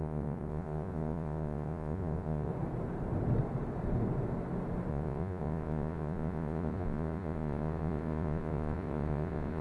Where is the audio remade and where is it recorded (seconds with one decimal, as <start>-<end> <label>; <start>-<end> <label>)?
0.0-2.5 remade; 2.5-4.9 recorded; 4.9-9.6 remade